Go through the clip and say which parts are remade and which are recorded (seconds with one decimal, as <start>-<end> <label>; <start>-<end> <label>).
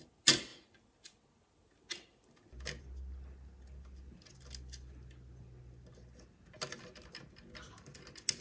0.0-8.4 recorded